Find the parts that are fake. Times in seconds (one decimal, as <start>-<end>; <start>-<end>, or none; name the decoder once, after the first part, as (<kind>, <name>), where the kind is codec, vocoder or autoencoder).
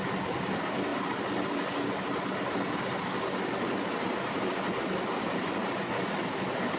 none